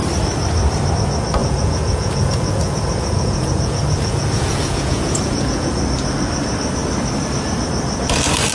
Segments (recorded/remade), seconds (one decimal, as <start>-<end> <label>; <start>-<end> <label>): 0.0-1.4 recorded; 1.4-5.8 remade; 5.8-8.5 recorded